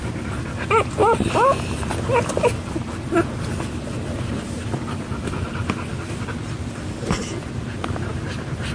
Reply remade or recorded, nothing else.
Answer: recorded